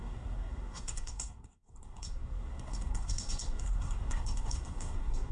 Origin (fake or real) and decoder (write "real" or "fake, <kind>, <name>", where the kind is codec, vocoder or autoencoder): fake, codec, SNAC